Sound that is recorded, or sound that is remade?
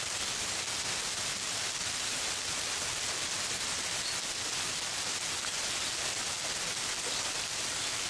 recorded